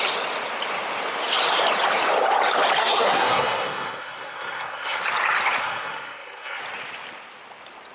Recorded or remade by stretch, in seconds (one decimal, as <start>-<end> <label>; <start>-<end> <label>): 0.0-2.8 recorded; 2.8-5.0 remade; 5.0-5.6 recorded; 5.6-6.6 remade; 6.6-7.9 recorded